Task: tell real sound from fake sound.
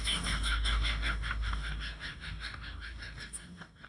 fake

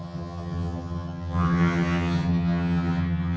fake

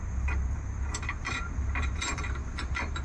fake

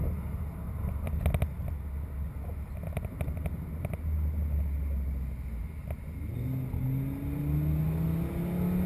real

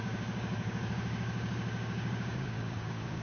fake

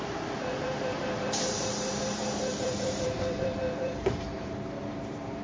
fake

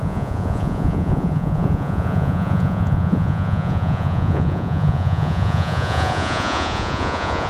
fake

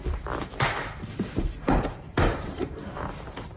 fake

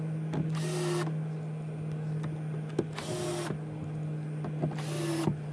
real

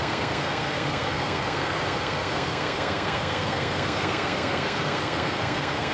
fake